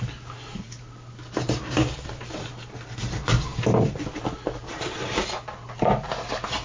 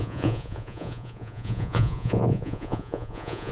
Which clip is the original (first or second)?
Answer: first